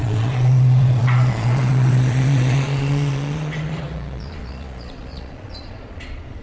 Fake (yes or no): yes